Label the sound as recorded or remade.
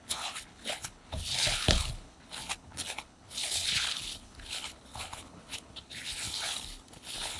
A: remade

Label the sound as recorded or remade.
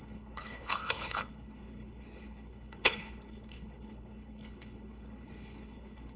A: remade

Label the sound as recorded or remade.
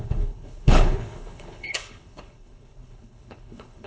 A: remade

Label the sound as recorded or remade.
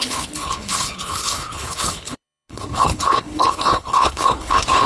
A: remade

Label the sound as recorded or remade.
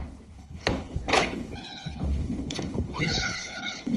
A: remade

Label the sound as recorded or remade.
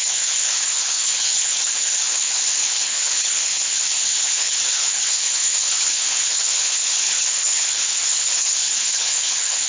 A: remade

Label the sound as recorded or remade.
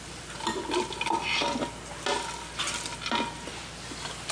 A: recorded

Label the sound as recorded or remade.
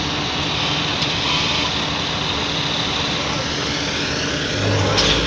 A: recorded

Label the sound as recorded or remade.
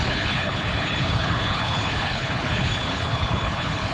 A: remade